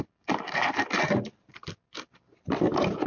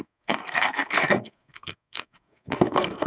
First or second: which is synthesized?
second